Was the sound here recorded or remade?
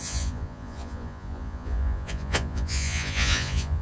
remade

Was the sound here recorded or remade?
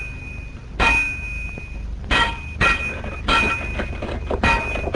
recorded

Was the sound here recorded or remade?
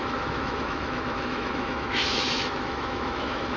remade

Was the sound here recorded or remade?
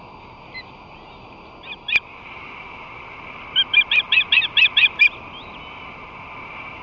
recorded